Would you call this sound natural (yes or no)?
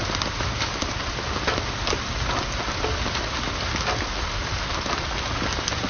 yes